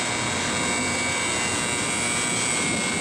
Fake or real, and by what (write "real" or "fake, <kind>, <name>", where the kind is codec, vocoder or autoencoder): real